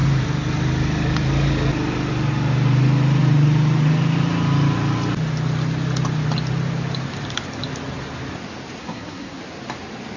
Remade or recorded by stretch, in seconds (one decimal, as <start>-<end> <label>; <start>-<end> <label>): 0.0-8.8 recorded; 8.8-9.4 remade; 9.4-10.2 recorded